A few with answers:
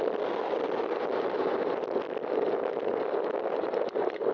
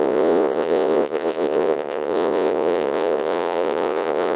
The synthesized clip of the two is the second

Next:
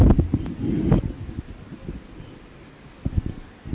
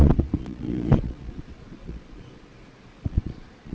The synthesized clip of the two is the second